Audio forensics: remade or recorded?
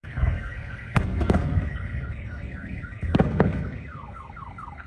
remade